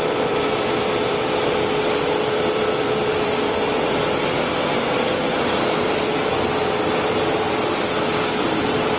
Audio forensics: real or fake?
fake